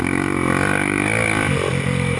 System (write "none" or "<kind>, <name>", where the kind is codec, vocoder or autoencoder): none